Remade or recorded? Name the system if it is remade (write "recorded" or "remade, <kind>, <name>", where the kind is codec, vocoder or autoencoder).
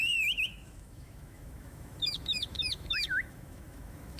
remade, autoencoder, DAC-VAE